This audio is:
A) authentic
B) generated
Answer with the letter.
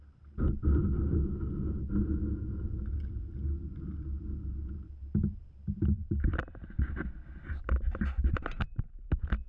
A